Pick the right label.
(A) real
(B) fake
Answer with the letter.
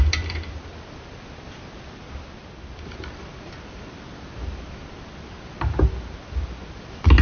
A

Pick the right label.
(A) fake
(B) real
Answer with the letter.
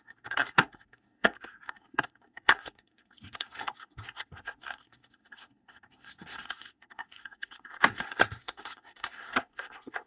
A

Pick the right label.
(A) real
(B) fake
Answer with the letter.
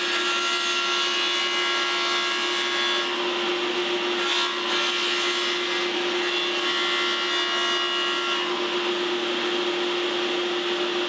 A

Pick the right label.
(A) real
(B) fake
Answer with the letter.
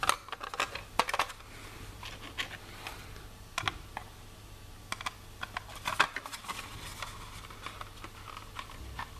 A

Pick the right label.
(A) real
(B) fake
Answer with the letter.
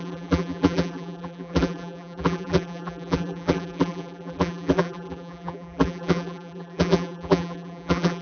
B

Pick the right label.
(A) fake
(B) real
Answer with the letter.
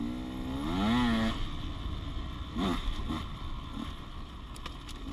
B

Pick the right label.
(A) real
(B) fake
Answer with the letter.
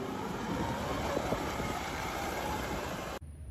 B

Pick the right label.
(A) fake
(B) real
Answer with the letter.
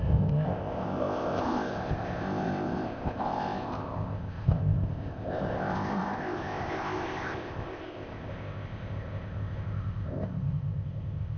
A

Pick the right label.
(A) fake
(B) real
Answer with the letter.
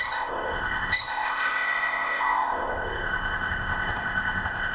A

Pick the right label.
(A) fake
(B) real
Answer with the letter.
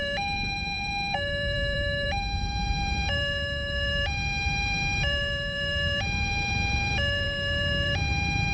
A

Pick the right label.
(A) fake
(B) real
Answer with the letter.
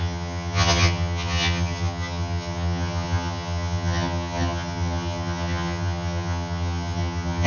A